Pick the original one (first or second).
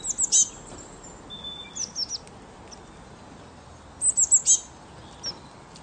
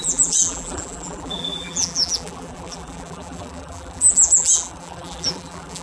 first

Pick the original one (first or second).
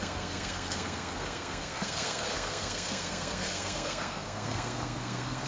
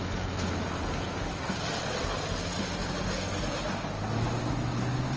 second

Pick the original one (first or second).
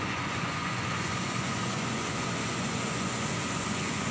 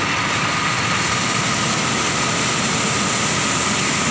second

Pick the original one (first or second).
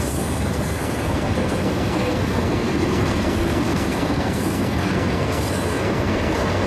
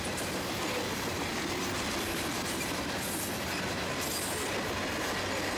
second